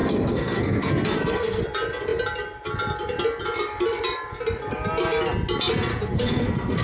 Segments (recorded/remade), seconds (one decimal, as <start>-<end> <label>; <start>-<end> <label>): 0.0-1.6 remade; 1.6-5.9 recorded; 5.9-6.8 remade